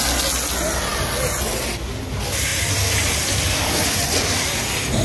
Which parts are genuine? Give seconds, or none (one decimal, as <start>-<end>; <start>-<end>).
0.0-2.5; 4.2-5.0

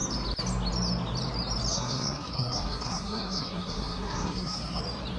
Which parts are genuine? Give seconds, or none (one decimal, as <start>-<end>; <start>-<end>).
0.0-1.7; 4.8-5.2

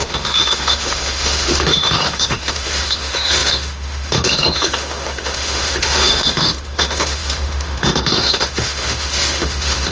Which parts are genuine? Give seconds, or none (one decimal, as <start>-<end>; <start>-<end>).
none

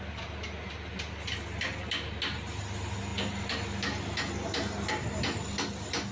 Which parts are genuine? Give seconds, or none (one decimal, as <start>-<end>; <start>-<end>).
0.0-6.1

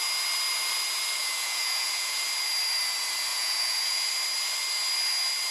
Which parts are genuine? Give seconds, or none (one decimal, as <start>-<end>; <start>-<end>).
0.0-1.2; 2.2-3.3; 4.1-5.5

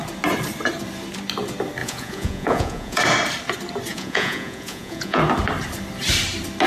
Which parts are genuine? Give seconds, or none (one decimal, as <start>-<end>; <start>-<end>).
0.0-1.8; 3.0-3.9; 5.2-6.7

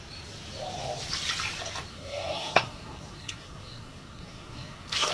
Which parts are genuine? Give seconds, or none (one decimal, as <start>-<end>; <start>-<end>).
0.0-1.9

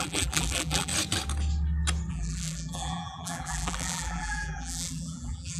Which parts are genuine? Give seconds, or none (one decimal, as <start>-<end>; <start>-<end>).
0.9-2.1